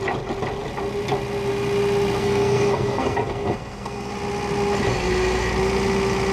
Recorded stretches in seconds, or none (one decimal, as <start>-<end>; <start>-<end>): 0.0-2.2; 4.1-6.3